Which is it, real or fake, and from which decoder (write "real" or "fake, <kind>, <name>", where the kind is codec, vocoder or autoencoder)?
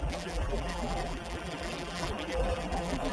fake, vocoder, BigVGAN v2